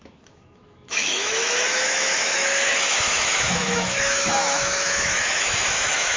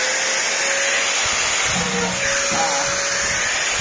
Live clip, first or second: second